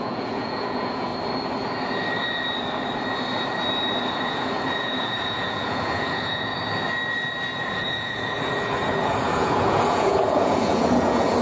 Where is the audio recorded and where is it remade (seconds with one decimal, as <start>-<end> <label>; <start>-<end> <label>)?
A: 0.0-1.1 remade; 1.1-4.2 recorded; 4.2-6.5 remade; 6.5-7.7 recorded; 7.7-11.4 remade